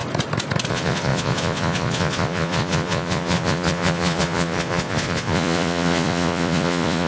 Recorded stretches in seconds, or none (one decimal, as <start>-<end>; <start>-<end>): 0.0-0.7